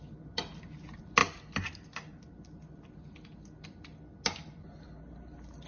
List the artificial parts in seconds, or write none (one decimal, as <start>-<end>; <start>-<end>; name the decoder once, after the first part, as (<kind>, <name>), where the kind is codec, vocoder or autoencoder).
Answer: none